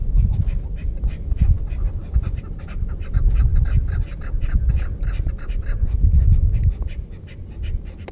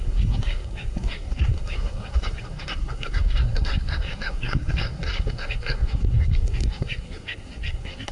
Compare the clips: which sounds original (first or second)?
first